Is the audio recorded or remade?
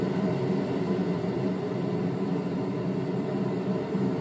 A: remade